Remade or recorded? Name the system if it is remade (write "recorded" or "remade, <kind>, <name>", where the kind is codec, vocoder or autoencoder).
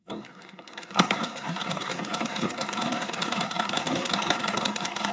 remade, codec, SNAC